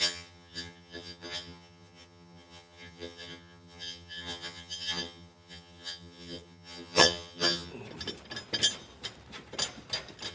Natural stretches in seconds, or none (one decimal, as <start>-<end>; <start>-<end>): 7.7-10.3